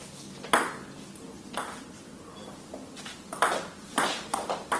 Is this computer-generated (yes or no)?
no